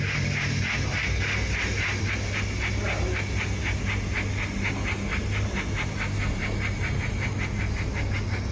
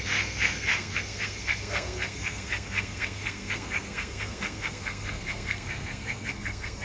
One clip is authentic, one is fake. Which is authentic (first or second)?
first